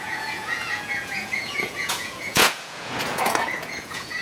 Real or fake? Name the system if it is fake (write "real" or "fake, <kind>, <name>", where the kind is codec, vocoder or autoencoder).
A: fake, vocoder, Vocos